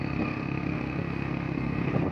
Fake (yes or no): yes